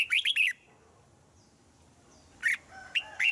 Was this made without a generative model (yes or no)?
yes